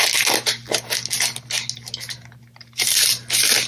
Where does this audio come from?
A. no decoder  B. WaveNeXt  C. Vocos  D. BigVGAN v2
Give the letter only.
A